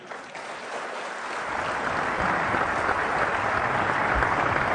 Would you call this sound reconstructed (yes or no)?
no